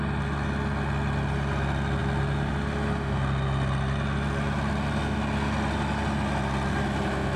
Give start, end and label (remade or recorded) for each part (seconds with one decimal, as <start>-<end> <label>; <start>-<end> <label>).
0.0-7.4 recorded